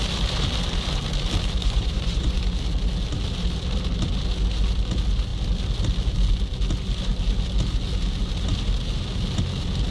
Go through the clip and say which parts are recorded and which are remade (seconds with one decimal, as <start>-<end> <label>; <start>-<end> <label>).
0.0-1.6 recorded; 1.6-2.4 remade; 2.4-9.9 recorded